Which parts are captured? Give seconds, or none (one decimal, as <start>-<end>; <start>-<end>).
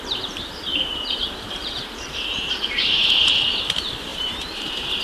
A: none